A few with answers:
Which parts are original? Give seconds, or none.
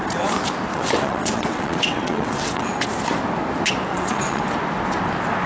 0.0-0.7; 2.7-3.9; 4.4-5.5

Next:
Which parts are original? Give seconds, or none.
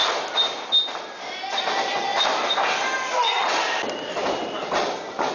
0.0-5.3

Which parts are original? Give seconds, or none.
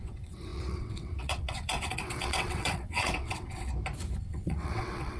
3.7-4.2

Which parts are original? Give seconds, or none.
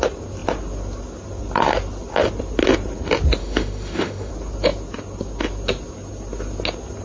0.0-3.4; 4.3-7.0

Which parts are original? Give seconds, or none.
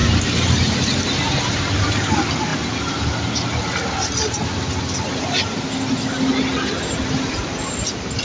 0.0-8.2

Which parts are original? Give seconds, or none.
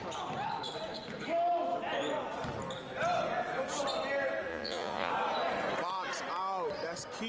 0.0-4.5; 5.1-7.3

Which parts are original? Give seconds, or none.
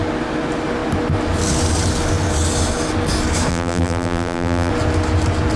0.0-3.5; 4.7-5.6